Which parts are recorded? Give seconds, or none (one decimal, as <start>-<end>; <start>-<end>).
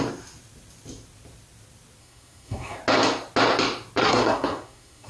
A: 0.0-2.0; 2.8-4.0